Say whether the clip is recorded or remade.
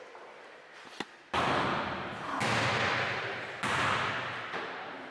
recorded